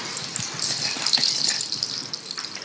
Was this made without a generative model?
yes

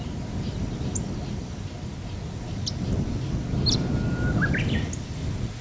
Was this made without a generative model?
yes